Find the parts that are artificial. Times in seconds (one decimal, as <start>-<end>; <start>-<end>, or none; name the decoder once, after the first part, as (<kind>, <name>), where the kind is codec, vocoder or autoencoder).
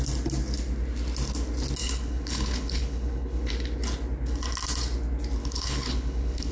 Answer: 1.8-3.5 (codec, HILCodec); 5.4-6.5